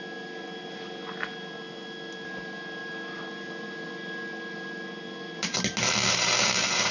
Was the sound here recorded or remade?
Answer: recorded